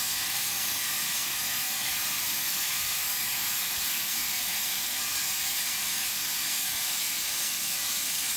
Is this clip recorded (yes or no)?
no